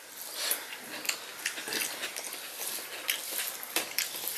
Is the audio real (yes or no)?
yes